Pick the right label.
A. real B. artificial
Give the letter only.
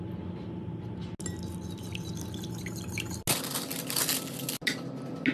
A